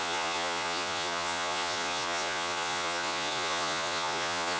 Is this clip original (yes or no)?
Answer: no